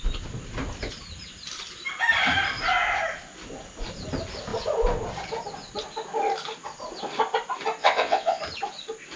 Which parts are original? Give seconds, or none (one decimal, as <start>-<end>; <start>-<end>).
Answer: 0.0-7.8; 8.4-9.2